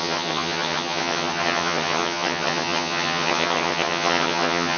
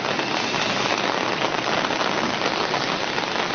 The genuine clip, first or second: second